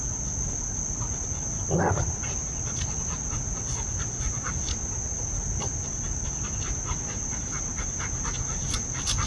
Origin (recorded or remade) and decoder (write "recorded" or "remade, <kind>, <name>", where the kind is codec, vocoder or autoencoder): recorded